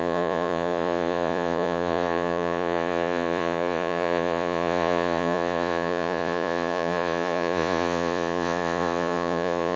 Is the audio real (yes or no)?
no